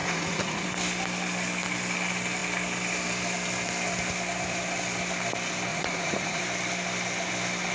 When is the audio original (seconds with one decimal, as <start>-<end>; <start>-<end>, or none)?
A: 0.7-5.7; 6.4-7.7